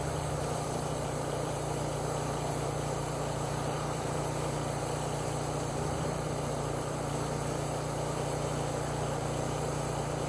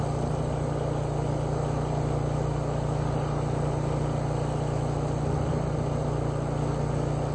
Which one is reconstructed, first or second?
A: first